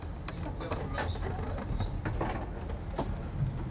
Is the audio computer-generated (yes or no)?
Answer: no